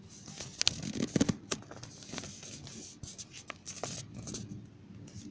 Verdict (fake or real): real